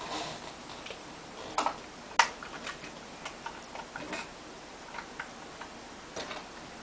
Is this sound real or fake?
real